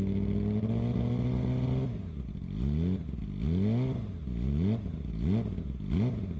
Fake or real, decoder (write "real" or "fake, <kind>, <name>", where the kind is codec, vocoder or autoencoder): real